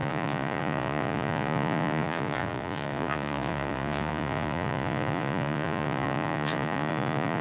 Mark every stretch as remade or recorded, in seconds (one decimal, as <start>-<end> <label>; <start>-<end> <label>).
0.0-7.4 remade

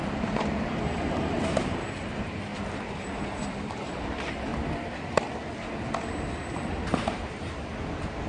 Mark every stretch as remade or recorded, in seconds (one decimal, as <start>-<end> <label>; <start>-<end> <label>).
0.0-2.5 remade; 2.5-3.1 recorded; 3.1-4.5 remade; 4.5-6.0 recorded; 6.0-8.3 remade

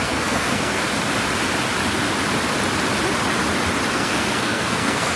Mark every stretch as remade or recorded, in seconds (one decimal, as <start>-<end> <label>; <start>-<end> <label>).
0.0-0.8 remade; 0.8-3.9 recorded; 3.9-5.2 remade